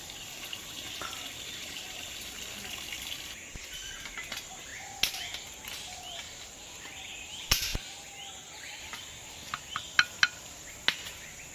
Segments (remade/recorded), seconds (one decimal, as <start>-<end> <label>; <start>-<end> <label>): 0.0-11.5 recorded